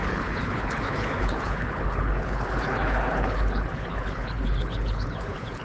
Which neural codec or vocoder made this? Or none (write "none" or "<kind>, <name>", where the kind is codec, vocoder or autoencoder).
codec, HILCodec